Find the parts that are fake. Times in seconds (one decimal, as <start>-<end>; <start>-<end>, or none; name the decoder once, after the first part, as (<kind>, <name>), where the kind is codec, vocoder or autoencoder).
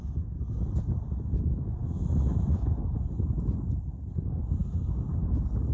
1.8-2.8 (autoencoder, DAC-VAE)